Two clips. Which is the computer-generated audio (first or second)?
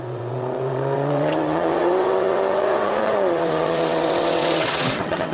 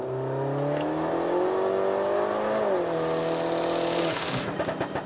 first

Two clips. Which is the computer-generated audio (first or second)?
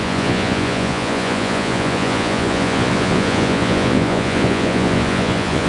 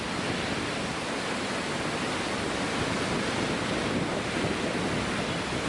first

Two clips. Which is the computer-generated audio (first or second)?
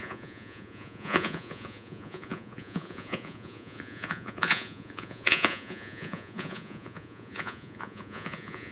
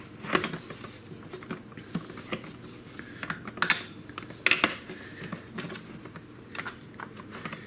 first